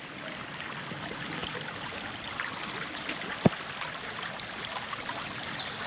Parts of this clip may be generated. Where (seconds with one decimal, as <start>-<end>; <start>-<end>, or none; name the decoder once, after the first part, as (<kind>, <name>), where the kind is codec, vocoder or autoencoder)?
none